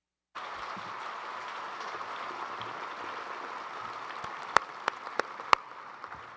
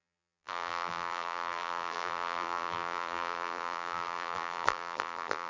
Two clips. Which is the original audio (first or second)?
first